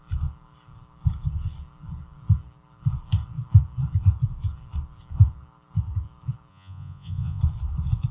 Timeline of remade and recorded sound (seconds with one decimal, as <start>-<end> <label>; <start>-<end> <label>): 0.0-6.5 recorded; 6.5-7.4 remade; 7.4-8.1 recorded